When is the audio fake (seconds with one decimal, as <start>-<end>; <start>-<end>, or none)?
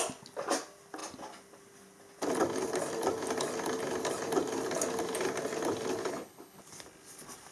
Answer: 6.0-6.6